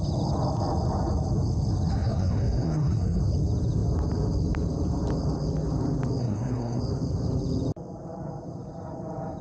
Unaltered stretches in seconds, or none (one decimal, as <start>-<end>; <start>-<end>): 0.0-1.9; 3.2-6.2; 6.8-9.4